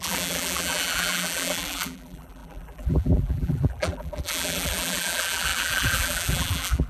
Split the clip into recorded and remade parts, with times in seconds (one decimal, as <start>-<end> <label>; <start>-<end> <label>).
0.0-6.9 remade

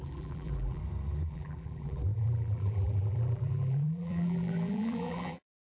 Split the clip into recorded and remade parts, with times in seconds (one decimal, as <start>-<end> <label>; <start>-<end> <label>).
0.0-0.8 remade; 0.8-1.3 recorded; 1.3-5.6 remade

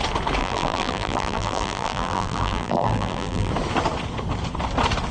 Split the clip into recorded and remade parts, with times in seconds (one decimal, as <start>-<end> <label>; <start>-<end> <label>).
0.0-0.4 recorded; 0.4-3.5 remade; 3.5-5.1 recorded

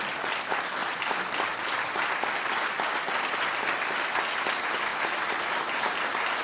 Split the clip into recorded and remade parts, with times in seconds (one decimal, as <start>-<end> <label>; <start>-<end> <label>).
0.0-0.8 recorded; 0.8-3.2 remade; 3.2-6.4 recorded